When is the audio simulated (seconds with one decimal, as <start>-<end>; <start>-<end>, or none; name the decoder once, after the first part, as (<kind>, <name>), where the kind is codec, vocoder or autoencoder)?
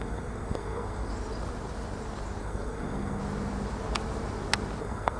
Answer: 0.0-1.1 (codec, SNAC); 2.4-3.2; 4.8-5.2